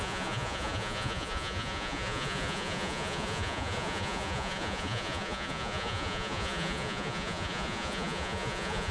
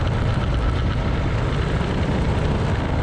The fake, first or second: first